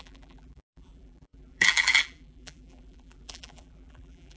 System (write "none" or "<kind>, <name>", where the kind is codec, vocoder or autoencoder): vocoder, BigVGAN v2